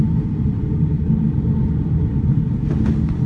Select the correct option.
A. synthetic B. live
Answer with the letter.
B